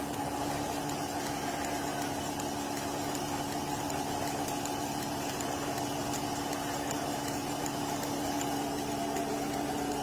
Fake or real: real